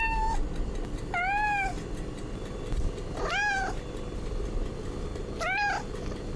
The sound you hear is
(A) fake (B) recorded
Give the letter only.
B